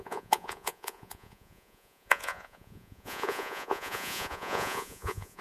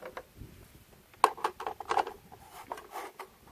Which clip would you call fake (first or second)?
first